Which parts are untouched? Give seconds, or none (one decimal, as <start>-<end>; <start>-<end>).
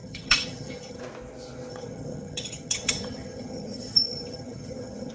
1.0-1.7